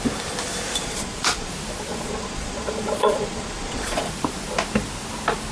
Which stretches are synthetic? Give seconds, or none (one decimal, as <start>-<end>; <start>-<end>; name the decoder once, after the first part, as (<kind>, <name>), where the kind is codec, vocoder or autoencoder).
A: 0.8-1.5 (vocoder, Vocos); 1.9-4.1